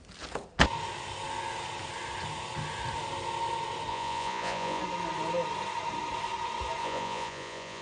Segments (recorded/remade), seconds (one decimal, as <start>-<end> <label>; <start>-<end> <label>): 0.0-3.9 recorded; 3.9-4.8 remade; 4.8-6.8 recorded; 6.8-7.8 remade